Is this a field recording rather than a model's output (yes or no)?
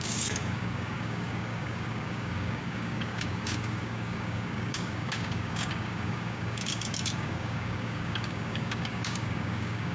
no